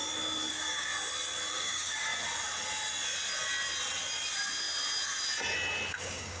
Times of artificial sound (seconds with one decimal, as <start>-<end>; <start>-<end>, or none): 0.5-0.9; 1.5-2.1; 5.9-6.4